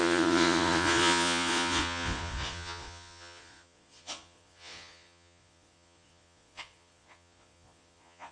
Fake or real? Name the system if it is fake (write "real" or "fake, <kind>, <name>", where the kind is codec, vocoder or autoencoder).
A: fake, vocoder, Vocos